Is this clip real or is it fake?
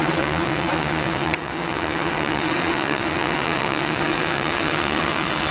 fake